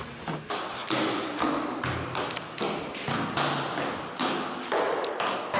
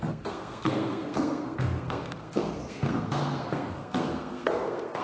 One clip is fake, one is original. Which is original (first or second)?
first